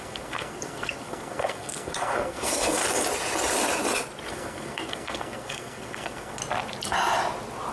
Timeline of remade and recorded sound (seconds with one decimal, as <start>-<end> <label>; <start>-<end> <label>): 0.0-2.8 remade; 2.8-4.3 recorded; 4.3-6.4 remade; 6.4-7.7 recorded